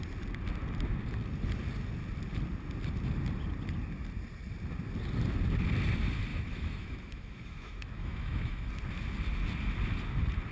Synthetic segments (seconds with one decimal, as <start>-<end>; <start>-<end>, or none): 6.3-8.7